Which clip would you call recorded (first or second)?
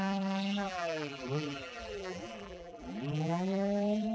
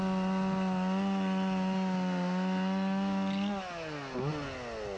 second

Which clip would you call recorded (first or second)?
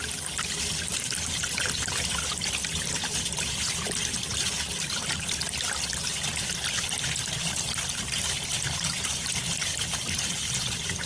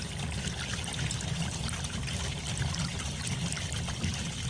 first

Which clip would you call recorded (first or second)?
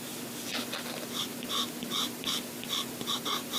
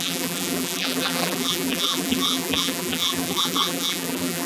first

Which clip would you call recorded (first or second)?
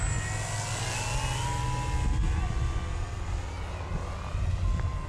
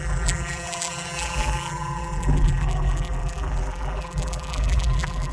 first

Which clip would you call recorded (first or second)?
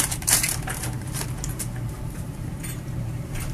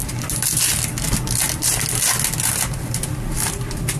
second